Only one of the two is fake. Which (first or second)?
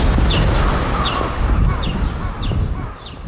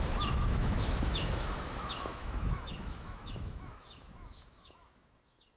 second